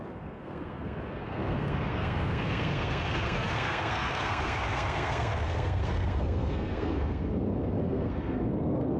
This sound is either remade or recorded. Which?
remade